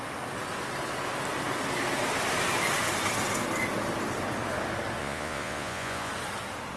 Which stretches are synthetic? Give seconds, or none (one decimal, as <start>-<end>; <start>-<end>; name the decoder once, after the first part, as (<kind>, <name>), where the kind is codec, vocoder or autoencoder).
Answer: 5.0-6.1 (vocoder, Vocos)